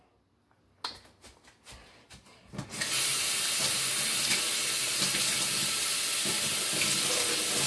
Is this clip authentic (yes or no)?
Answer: yes